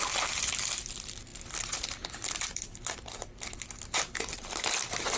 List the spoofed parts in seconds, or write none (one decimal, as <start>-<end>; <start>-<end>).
1.3-3.8

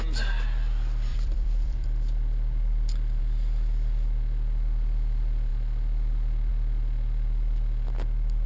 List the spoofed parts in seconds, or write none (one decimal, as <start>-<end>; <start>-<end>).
1.1-3.2

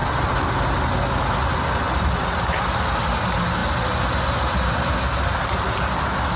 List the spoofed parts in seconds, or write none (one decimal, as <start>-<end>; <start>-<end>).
none

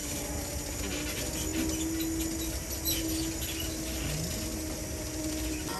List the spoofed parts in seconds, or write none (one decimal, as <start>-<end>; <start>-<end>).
none

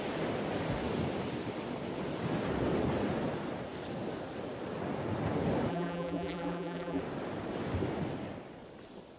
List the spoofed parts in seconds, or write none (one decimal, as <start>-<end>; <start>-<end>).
5.7-7.0

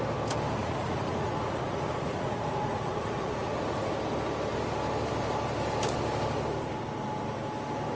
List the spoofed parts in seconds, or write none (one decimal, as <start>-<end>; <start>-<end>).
0.6-3.9

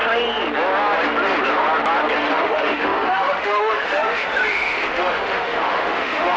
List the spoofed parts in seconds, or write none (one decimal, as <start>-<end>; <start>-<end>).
2.3-6.4

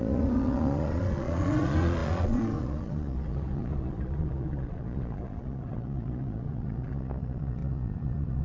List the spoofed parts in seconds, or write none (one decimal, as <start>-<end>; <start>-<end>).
0.0-8.4